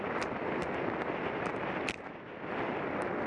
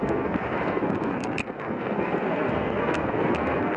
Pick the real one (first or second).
first